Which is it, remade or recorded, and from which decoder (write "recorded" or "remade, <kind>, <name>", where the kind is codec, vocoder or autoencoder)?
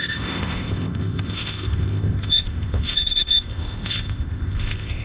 remade, codec, ZipCodec